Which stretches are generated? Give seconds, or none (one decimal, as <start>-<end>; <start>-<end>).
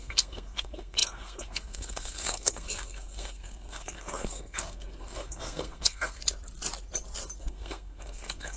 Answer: 0.0-6.2; 7.4-8.6